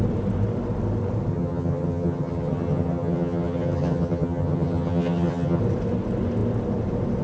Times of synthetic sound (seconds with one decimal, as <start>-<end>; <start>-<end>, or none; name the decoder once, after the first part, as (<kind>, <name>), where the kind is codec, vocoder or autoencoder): 1.3-5.6 (vocoder, HiFi-GAN)